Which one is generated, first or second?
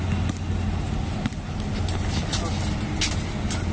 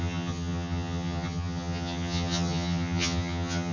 second